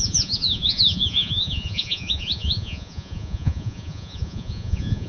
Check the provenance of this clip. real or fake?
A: fake